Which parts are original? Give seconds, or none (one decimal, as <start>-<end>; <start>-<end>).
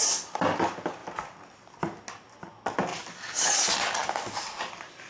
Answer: 0.0-5.1